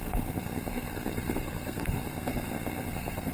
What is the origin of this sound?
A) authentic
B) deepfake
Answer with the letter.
B